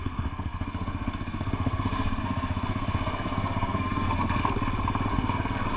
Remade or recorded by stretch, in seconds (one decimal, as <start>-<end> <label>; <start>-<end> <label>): 0.0-4.4 remade; 4.4-5.1 recorded; 5.1-5.8 remade